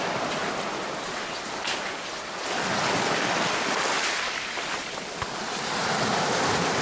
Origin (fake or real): fake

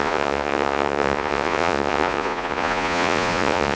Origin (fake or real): fake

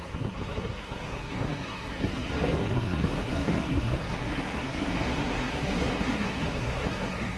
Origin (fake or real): fake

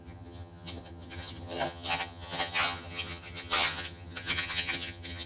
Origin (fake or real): fake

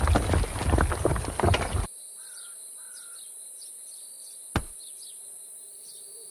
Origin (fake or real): real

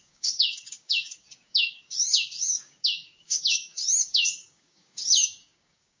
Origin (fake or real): fake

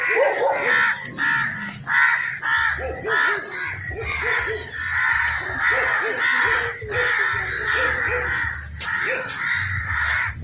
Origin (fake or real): real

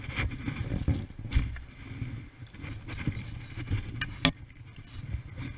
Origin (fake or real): real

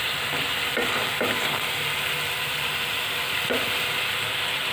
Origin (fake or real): fake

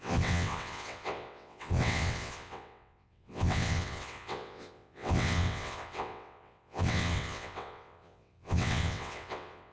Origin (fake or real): fake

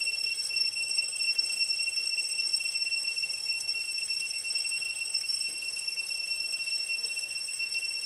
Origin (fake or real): fake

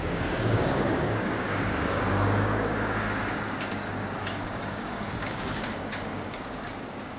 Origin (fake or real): fake